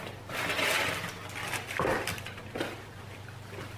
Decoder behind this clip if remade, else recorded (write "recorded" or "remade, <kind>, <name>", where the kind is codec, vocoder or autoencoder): recorded